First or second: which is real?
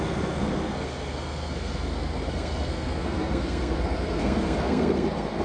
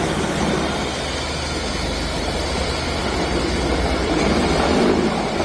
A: second